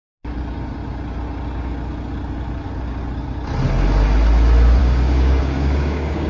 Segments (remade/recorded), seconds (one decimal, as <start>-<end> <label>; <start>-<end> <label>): 0.0-4.8 recorded; 4.8-6.3 remade